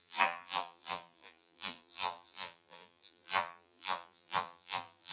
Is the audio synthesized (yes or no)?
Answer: yes